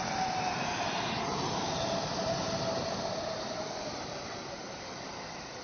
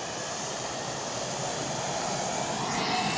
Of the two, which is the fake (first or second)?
first